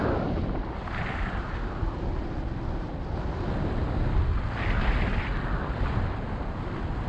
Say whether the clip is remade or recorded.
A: recorded